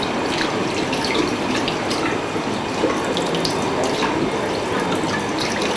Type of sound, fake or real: real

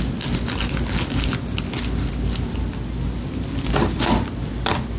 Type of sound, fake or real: real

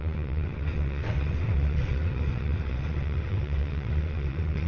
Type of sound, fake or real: fake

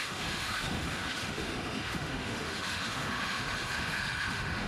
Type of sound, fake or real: fake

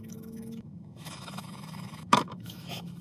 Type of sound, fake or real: fake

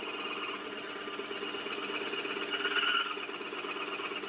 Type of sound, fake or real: real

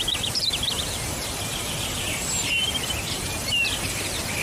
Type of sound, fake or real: fake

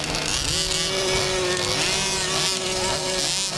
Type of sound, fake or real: real